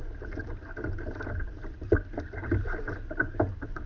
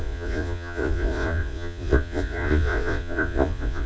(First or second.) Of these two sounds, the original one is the first